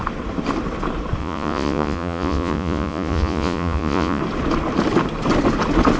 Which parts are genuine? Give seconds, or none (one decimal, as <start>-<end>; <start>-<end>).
0.0-1.2; 4.2-6.0